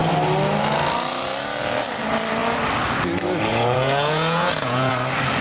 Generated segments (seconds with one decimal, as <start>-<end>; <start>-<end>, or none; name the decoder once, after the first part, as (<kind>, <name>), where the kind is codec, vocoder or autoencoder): 3.5-4.9 (vocoder, Vocos)